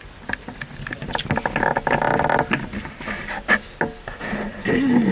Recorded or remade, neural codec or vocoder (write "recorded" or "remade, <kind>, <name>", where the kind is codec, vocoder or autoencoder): recorded